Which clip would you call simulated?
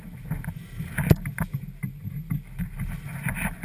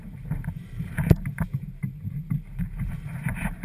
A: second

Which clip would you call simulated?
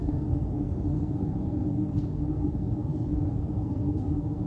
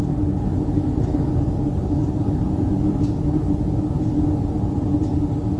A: first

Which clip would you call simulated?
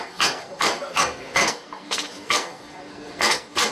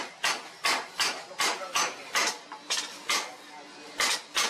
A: first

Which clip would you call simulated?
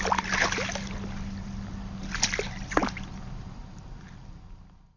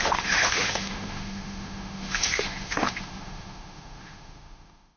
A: second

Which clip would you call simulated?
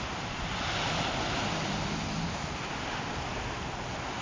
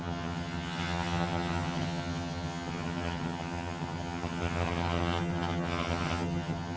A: second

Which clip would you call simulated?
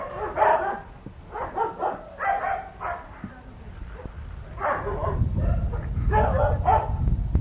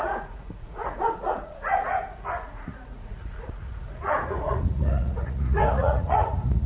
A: second